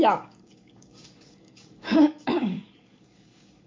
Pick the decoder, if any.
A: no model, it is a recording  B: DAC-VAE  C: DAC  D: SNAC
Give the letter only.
C